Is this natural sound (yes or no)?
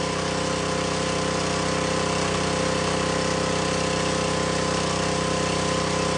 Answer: yes